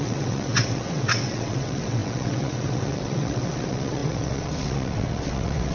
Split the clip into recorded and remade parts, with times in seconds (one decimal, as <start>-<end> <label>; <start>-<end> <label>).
0.0-5.7 remade